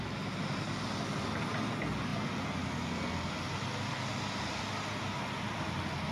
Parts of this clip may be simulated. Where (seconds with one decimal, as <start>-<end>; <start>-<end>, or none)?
none